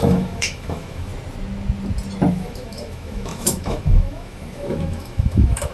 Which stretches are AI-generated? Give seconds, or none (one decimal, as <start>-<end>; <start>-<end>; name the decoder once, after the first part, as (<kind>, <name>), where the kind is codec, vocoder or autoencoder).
0.0-1.1 (autoencoder, DAC-VAE); 2.3-5.7